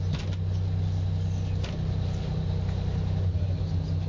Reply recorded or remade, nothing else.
recorded